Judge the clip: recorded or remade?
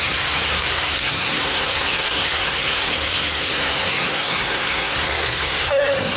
remade